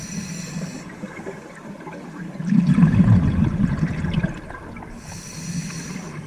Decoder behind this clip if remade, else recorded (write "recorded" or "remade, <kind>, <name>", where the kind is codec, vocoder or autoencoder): recorded